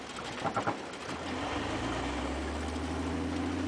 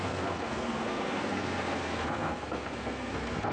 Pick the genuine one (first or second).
first